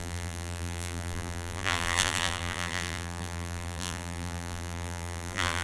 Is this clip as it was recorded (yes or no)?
no